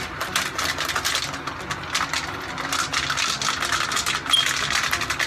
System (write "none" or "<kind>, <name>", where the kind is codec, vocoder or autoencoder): none